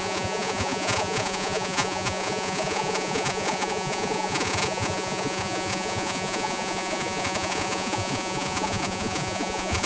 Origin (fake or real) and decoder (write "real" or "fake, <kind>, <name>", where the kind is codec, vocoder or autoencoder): fake, vocoder, Vocos